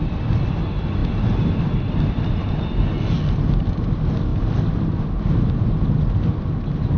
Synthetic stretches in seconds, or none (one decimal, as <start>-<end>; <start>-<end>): 1.0-2.9; 4.3-5.0